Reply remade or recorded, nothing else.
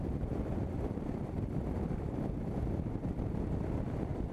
remade